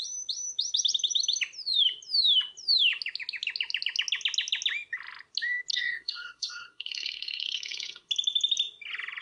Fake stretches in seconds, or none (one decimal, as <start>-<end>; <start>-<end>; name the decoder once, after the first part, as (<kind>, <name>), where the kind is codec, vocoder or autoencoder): 5.7-8.1 (codec, SNAC)